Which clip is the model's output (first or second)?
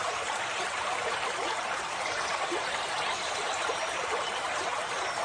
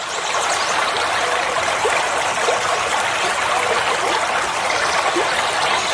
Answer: first